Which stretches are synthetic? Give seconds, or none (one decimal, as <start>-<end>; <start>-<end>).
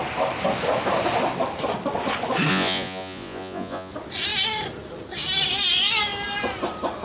2.5-3.9